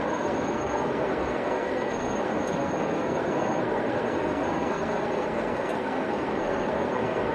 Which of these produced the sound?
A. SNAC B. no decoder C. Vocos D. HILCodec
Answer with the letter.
A